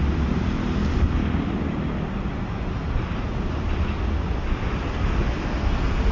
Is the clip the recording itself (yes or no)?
yes